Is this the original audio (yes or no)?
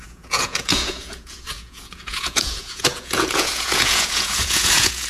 no